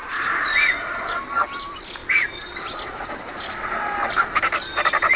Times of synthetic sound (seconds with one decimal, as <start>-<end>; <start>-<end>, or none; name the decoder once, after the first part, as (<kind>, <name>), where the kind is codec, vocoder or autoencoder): none